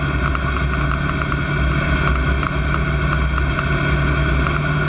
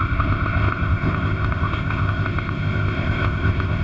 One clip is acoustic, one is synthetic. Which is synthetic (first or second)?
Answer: second